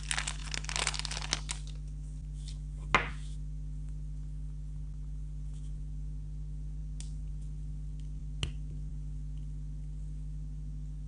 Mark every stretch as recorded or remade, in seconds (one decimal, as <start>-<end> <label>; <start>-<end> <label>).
0.0-11.1 recorded